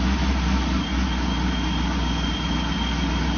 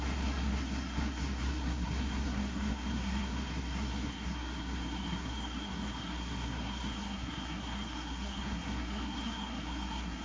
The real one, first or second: first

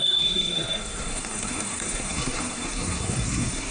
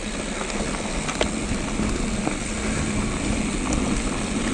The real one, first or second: second